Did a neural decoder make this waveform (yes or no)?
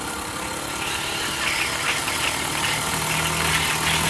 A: no